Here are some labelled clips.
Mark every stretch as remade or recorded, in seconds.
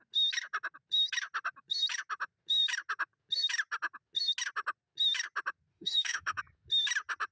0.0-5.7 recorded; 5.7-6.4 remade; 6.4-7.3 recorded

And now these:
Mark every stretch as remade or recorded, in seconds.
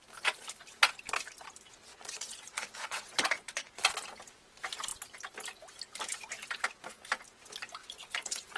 0.0-1.9 recorded; 1.9-3.8 remade; 3.8-7.8 recorded; 7.8-8.6 remade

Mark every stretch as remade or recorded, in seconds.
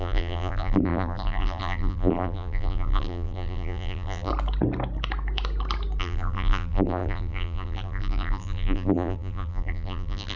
0.0-4.3 remade; 4.3-6.0 recorded; 6.0-10.4 remade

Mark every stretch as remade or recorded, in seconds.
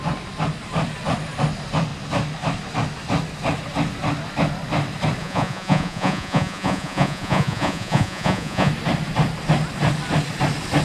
0.0-5.2 recorded; 5.2-8.7 remade; 8.7-10.8 recorded